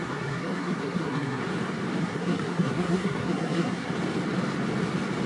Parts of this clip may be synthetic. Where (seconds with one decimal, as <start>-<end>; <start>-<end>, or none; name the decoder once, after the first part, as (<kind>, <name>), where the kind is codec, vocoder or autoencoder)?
0.0-1.4 (codec, SNAC); 2.0-3.9